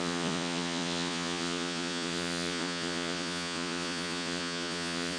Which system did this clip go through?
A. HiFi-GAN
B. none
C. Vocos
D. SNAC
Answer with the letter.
C